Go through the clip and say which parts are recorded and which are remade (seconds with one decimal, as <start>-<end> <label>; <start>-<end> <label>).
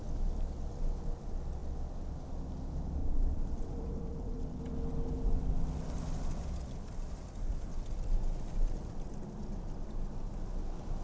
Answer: 0.0-3.0 recorded; 3.0-4.6 remade; 4.6-11.0 recorded